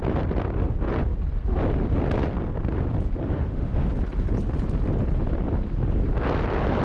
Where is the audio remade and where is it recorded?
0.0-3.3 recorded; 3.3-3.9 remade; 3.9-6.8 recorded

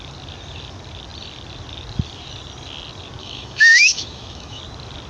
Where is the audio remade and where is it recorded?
0.0-3.2 recorded; 3.2-4.6 remade; 4.6-5.1 recorded